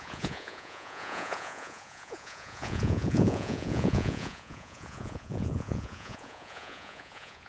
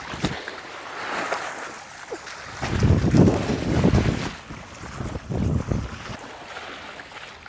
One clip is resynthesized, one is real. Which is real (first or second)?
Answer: second